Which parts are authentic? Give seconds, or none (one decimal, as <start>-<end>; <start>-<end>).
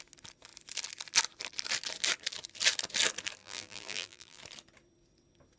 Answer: 0.0-3.4; 4.4-5.6